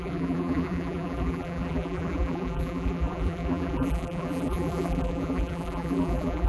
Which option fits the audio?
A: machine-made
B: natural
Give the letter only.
A